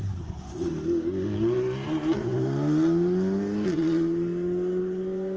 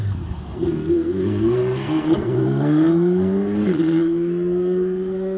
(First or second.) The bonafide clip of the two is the first